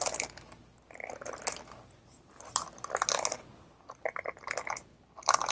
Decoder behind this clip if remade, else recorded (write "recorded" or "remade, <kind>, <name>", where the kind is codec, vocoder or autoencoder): recorded